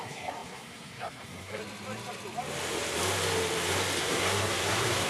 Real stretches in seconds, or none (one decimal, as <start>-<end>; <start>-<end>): 1.6-4.0